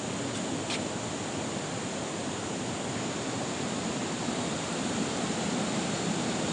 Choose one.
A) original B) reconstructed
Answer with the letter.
A